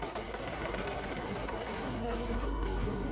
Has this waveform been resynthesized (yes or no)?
yes